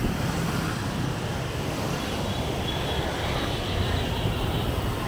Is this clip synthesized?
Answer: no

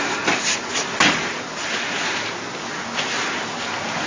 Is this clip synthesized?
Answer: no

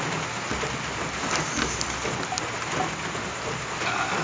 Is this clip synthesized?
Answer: no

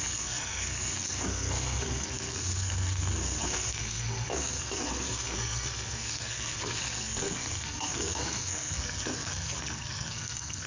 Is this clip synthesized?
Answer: yes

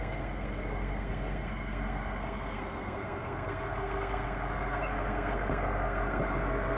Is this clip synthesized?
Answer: yes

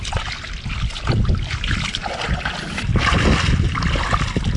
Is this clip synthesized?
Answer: no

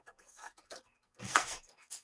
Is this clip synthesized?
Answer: yes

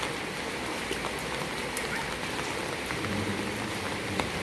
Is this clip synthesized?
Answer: no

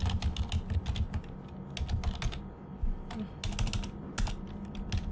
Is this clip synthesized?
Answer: no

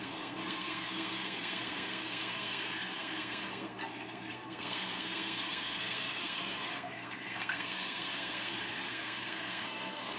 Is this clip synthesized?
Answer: yes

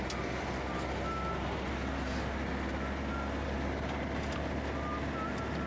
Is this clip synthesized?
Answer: no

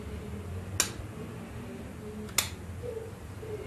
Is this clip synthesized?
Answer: no